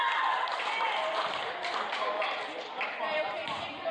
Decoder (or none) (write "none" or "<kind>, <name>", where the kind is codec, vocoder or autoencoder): none